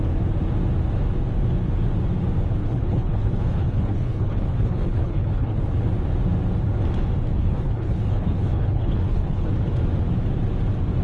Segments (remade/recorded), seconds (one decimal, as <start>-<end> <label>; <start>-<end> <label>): 0.0-2.6 recorded; 2.6-5.6 remade; 5.6-7.3 recorded; 7.3-9.5 remade; 9.5-11.0 recorded

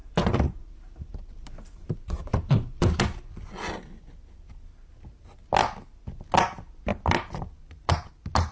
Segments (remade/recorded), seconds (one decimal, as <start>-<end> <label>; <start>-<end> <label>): 0.0-3.0 remade; 3.0-8.5 recorded